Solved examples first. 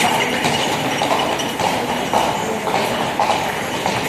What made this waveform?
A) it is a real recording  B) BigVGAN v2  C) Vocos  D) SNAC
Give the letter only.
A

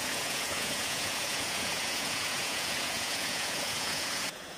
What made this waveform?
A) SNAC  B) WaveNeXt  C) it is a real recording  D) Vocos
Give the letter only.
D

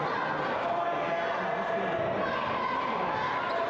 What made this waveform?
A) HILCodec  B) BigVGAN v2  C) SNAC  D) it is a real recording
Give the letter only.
D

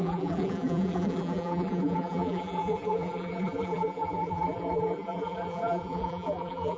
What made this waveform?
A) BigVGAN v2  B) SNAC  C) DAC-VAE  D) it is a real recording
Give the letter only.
A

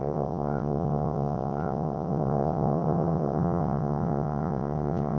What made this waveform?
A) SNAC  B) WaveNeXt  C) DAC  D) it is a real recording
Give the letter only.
B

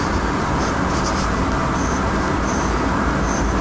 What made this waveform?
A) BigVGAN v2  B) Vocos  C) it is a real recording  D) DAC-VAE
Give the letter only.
C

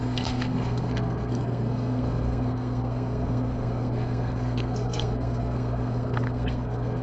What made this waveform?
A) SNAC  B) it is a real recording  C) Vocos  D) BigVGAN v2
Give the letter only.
A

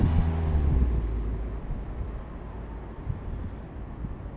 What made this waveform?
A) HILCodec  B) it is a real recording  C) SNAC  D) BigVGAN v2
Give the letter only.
B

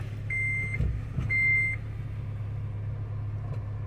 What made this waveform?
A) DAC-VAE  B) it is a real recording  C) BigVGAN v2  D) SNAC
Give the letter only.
B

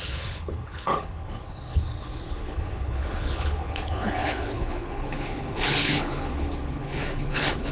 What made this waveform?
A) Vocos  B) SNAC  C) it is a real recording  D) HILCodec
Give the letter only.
D